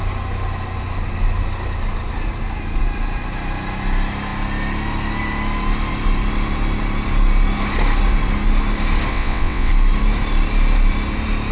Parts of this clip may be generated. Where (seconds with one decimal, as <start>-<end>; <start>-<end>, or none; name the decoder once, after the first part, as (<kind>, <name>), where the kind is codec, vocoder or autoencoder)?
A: 9.1-9.7 (vocoder, WaveNeXt)